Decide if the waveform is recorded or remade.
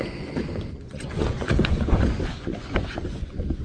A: remade